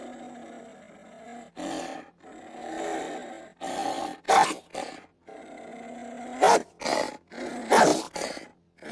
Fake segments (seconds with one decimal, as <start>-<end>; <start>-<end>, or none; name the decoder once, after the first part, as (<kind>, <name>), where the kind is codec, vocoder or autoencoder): none

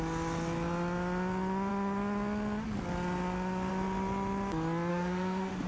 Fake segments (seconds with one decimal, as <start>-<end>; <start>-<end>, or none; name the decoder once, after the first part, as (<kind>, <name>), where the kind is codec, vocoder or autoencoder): 4.9-5.7 (autoencoder, DAC-VAE)

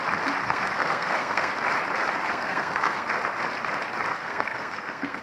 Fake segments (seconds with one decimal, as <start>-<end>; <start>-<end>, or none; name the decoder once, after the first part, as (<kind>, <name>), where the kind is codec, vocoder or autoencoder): 0.4-1.5 (codec, SNAC); 2.2-3.1; 4.1-5.2

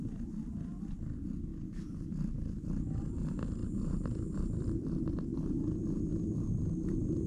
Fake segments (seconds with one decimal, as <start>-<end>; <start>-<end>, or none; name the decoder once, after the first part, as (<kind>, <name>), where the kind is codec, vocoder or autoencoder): 0.0-1.5 (vocoder, BigVGAN v2); 3.1-5.3; 6.1-7.3

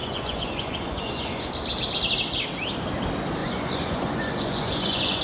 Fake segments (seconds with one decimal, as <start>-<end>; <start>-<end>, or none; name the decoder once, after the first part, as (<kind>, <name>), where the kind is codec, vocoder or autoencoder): 0.0-1.5 (vocoder, Vocos); 3.4-5.2